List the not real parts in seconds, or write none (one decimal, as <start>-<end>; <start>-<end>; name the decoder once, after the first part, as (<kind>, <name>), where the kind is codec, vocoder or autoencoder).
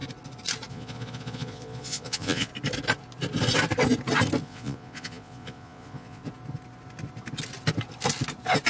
0.7-2.5 (vocoder, Vocos); 4.4-6.2